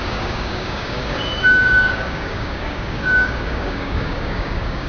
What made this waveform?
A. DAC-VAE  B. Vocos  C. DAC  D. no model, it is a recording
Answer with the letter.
C